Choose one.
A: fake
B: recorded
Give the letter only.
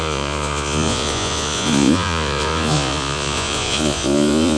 A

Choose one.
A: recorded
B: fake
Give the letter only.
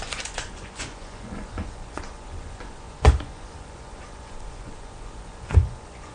B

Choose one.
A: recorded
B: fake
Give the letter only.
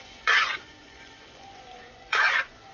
B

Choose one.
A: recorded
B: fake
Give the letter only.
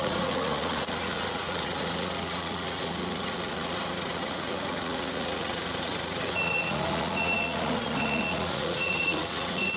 B